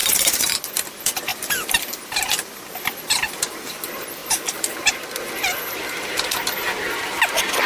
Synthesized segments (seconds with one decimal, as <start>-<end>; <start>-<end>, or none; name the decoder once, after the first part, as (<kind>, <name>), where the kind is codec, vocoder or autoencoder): 0.0-0.6 (vocoder, BigVGAN v2)